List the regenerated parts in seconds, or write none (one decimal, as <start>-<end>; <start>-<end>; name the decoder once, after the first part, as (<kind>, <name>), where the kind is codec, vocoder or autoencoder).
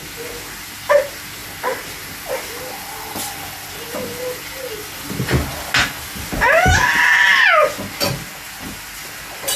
none